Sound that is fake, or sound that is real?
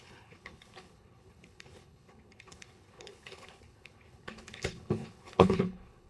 fake